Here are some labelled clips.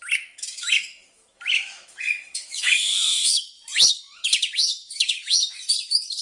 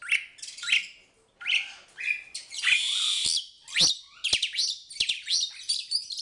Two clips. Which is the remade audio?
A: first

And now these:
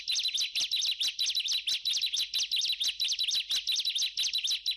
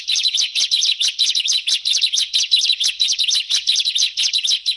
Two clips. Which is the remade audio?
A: second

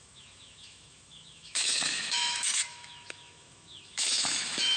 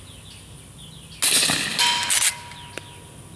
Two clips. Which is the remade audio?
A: first